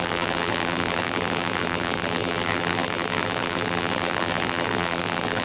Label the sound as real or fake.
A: fake